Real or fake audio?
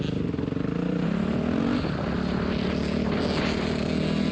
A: real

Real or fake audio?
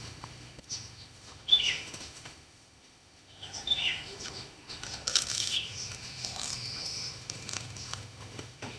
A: fake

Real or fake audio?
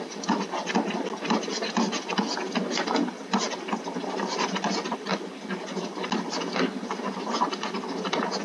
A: real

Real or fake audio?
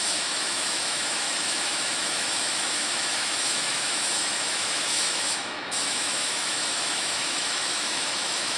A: fake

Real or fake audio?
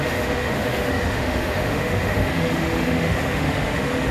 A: fake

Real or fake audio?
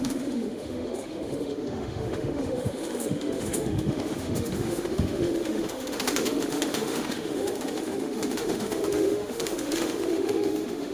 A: fake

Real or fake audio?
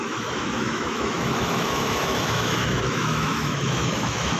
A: fake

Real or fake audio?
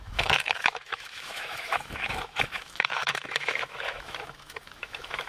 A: fake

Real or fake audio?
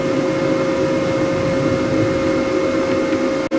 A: real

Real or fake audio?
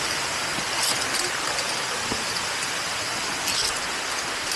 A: real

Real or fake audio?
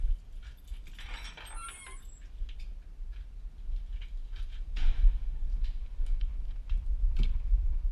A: real